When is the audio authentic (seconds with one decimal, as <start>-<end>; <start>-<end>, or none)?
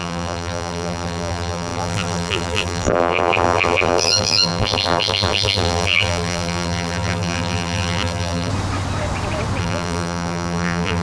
8.5-9.6